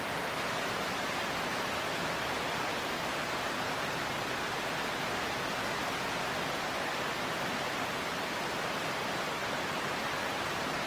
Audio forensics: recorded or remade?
recorded